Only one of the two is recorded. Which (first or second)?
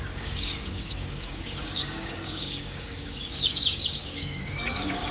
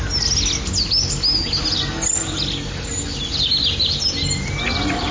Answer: second